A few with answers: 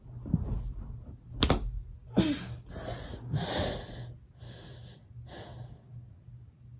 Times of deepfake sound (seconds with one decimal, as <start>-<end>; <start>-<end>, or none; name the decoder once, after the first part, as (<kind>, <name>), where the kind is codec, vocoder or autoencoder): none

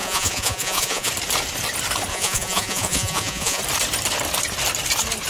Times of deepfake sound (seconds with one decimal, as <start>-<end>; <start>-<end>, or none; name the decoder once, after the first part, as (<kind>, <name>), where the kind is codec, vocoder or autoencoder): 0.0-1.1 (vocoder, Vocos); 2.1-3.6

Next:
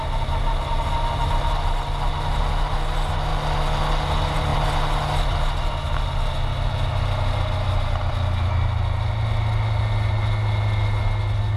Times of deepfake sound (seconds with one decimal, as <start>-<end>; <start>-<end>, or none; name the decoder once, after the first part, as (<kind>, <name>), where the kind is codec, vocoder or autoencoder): none

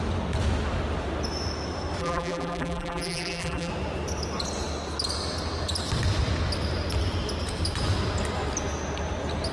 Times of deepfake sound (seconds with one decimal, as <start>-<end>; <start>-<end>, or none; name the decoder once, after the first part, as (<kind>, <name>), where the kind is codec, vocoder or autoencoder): 2.0-3.7 (vocoder, BigVGAN v2)

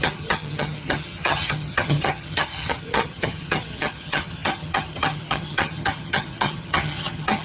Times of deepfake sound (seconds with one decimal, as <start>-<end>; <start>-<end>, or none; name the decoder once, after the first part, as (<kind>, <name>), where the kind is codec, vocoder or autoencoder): 0.0-7.4 (vocoder, HiFi-GAN)

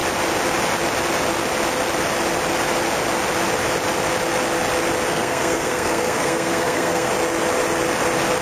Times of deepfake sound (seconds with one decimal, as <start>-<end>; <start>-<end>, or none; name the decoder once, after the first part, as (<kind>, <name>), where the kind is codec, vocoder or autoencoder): 5.1-7.1 (codec, SNAC)

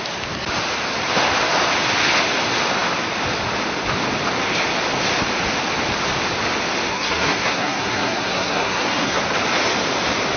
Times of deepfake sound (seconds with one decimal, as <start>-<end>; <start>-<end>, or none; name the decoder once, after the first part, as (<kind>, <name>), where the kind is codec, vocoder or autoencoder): 6.9-9.2 (codec, SNAC)

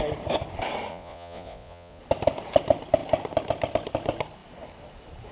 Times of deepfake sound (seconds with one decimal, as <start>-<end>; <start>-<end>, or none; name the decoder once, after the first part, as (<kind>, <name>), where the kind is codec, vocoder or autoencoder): 0.9-2.0 (vocoder, Vocos)